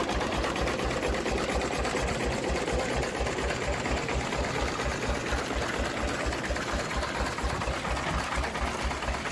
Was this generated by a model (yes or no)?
no